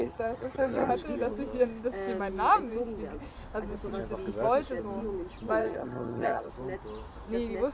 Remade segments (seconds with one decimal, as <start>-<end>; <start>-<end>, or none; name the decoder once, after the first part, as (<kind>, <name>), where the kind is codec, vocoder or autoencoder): 0.0-0.9 (vocoder, HiFi-GAN); 5.6-6.5